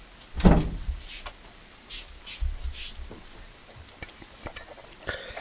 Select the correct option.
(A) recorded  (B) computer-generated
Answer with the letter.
A